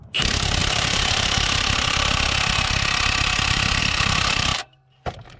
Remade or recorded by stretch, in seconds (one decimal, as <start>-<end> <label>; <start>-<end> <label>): 0.0-5.4 remade